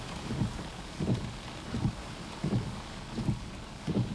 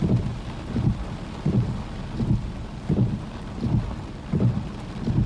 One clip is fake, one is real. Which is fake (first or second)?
first